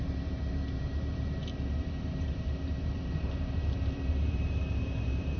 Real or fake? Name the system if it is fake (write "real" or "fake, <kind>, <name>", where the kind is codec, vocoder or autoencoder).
fake, vocoder, BigVGAN v2